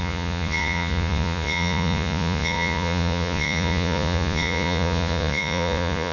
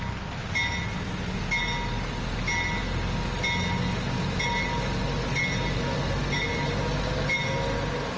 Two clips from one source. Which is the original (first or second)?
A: second